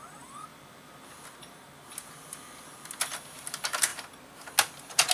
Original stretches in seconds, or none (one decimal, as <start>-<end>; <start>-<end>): 0.0-5.1